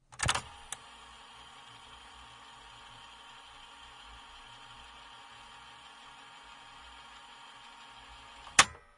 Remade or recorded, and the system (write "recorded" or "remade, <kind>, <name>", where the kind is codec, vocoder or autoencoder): recorded